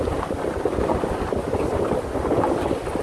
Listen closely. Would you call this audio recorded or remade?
recorded